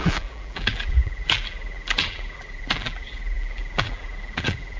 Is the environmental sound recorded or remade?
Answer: remade